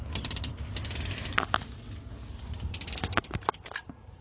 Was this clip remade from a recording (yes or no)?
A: no